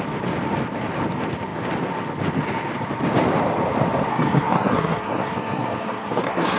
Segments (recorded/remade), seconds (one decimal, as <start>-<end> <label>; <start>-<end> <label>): 0.0-4.1 recorded; 4.1-6.6 remade

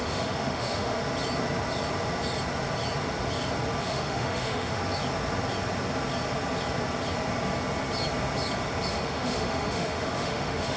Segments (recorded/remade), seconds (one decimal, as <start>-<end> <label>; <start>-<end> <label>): 0.0-1.0 remade; 1.0-3.8 recorded; 3.8-4.8 remade; 4.8-8.9 recorded; 8.9-10.8 remade

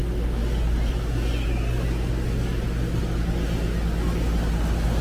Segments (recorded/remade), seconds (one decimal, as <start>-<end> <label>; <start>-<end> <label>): 0.0-5.0 recorded

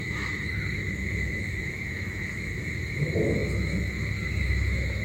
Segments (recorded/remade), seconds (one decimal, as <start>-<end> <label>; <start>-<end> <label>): 0.0-5.0 remade

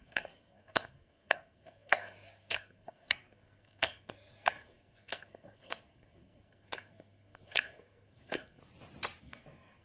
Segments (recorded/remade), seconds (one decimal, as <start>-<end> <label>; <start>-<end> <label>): 0.0-8.6 remade; 8.6-9.2 recorded; 9.2-9.8 remade

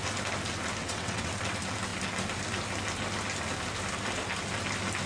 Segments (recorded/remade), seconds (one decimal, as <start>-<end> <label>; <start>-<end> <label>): 0.0-0.8 recorded; 0.8-1.3 remade; 1.3-5.1 recorded

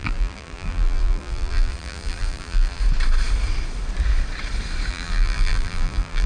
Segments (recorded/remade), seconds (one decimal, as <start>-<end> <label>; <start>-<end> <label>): 0.0-2.8 remade; 2.8-4.9 recorded; 4.9-6.3 remade

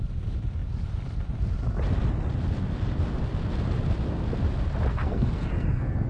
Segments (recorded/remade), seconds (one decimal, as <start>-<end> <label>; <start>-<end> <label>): 0.0-4.9 recorded; 4.9-6.1 remade